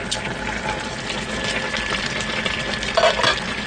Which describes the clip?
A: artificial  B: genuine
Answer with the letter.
B